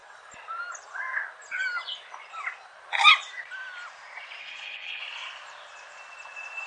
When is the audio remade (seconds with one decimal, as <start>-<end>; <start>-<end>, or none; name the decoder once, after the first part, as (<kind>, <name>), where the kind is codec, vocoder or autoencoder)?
4.4-5.0 (codec, HILCodec)